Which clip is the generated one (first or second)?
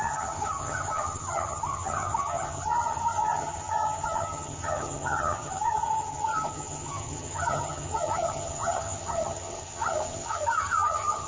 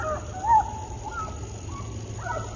first